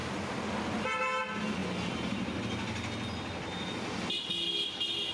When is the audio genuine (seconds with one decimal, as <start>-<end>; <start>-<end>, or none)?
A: 0.0-5.1